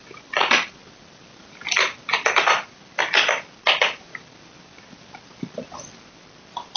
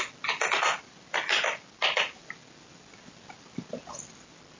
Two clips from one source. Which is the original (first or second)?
second